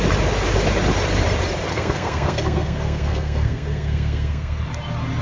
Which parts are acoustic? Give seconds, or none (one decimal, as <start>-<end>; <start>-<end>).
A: 0.0-1.7; 4.6-5.2